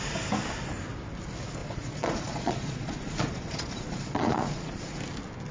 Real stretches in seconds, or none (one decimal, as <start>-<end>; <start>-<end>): 0.0-1.6; 4.9-5.5